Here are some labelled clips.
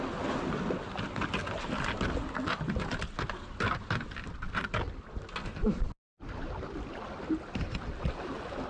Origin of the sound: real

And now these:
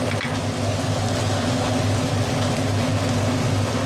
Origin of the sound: real